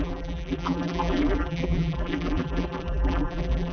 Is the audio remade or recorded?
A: remade